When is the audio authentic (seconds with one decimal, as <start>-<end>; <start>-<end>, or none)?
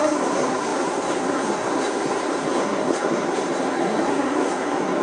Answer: none